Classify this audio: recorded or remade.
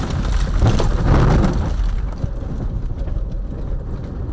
recorded